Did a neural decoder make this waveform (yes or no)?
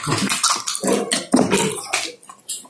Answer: no